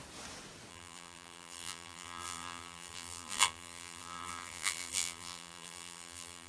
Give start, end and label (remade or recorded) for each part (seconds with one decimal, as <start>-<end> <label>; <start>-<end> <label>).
0.0-0.7 recorded; 0.7-6.5 remade